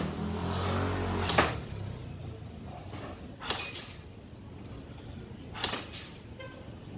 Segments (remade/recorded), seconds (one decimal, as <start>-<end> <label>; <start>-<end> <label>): 0.0-7.0 recorded